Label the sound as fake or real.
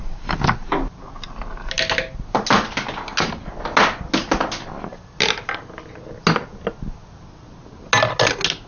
real